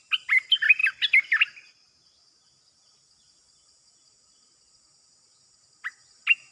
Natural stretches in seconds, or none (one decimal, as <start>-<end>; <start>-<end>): 0.0-6.5